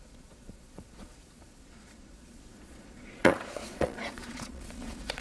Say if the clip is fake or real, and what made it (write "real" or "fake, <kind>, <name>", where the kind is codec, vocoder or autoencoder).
fake, vocoder, Vocos